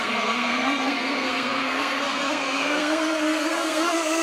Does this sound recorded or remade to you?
remade